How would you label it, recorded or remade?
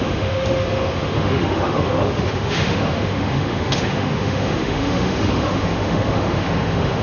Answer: remade